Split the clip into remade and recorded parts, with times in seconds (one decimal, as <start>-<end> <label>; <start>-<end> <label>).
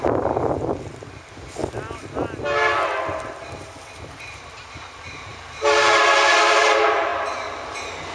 0.0-5.3 recorded; 5.3-6.0 remade; 6.0-8.1 recorded